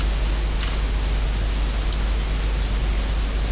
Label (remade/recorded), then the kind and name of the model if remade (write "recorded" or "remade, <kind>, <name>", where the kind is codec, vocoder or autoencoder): recorded